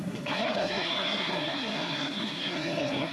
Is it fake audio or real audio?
fake